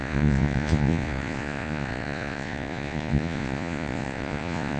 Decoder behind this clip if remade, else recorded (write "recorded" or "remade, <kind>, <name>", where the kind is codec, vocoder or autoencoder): remade, vocoder, Vocos